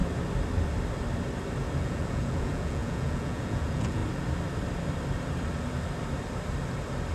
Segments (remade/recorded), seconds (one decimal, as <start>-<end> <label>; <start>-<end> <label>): 0.0-1.8 recorded; 1.8-4.0 remade; 4.0-7.1 recorded